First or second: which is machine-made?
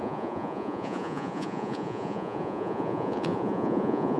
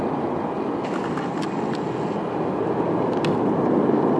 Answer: first